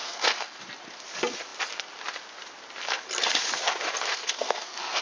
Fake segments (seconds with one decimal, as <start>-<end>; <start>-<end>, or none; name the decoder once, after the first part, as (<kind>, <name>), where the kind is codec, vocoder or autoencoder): 0.0-0.6 (codec, SNAC); 4.1-5.0